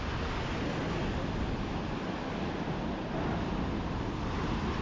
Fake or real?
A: real